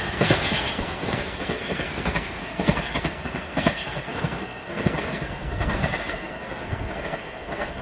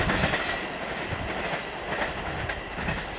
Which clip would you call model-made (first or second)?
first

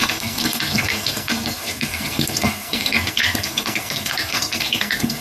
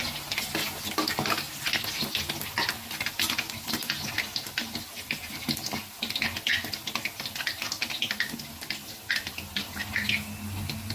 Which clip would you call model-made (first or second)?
first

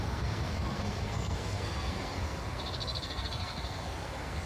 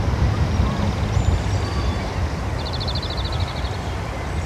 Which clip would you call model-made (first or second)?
first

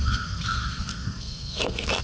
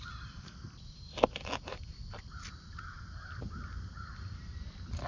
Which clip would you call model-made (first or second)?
first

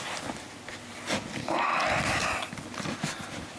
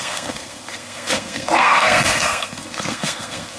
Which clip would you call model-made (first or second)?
second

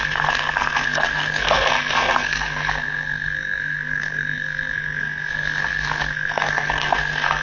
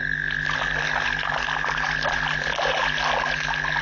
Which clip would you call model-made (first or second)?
first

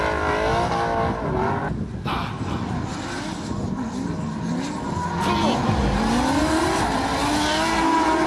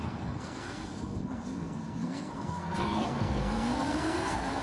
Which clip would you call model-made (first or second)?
second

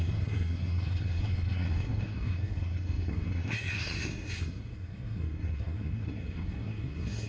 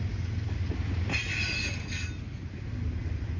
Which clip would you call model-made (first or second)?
first